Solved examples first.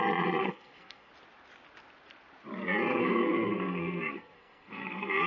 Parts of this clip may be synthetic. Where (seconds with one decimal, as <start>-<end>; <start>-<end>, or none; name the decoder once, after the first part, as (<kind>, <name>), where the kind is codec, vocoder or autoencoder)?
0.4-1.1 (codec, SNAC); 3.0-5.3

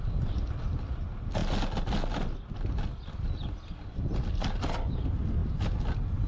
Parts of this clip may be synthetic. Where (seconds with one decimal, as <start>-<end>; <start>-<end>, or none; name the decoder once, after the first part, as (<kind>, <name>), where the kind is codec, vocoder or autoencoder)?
none

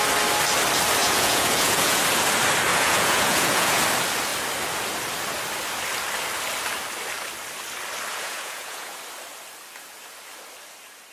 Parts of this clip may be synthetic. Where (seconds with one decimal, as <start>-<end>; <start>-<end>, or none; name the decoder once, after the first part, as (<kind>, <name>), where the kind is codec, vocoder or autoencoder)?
1.0-2.0 (vocoder, Vocos); 2.7-3.8; 8.1-9.0

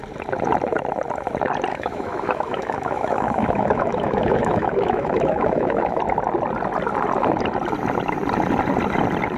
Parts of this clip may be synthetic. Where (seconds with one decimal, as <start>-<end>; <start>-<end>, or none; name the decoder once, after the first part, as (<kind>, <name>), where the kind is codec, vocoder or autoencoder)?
1.7-6.0 (autoencoder, DAC-VAE)

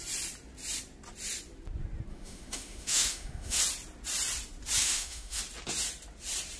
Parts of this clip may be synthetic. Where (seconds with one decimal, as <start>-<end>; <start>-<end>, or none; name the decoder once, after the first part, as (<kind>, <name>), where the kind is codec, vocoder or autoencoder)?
2.1-3.6 (autoencoder, DAC-VAE); 4.8-5.4